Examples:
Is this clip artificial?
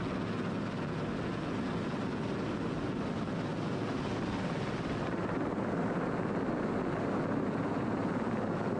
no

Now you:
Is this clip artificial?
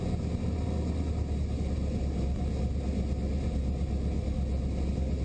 no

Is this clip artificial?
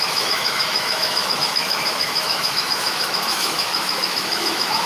yes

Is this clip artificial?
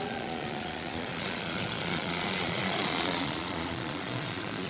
yes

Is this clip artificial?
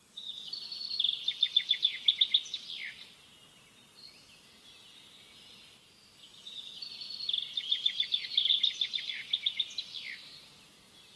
no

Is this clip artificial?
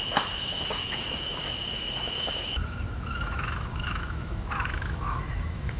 yes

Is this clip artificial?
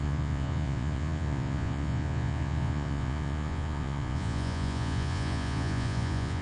yes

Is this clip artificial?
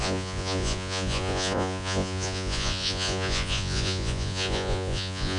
yes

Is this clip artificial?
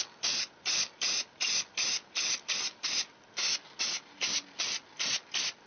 no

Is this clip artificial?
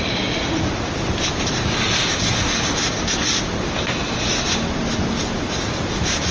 no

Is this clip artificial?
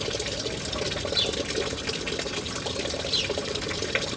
no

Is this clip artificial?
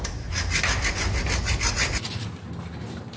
no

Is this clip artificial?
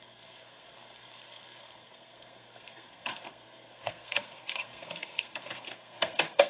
yes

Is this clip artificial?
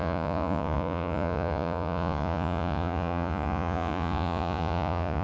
yes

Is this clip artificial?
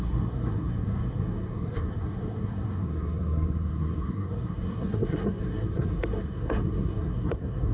yes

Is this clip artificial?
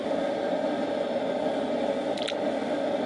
no